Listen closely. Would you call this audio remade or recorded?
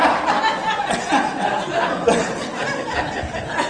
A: recorded